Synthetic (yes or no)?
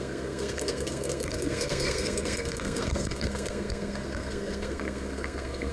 yes